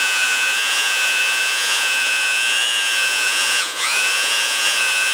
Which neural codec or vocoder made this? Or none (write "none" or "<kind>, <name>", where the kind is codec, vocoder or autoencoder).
vocoder, Vocos